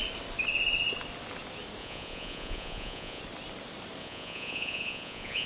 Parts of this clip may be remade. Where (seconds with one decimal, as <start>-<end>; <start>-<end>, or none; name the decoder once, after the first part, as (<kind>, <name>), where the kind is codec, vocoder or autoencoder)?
1.8-3.2 (vocoder, Vocos); 4.0-5.5